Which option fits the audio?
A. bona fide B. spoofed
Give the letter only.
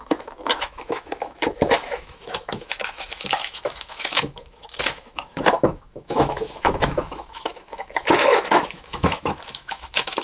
B